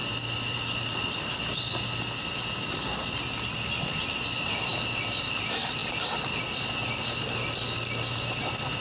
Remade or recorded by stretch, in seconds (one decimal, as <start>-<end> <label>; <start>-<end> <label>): 0.0-1.2 remade; 1.2-4.7 recorded; 4.7-5.3 remade; 5.3-5.8 recorded; 5.8-6.4 remade; 6.4-8.8 recorded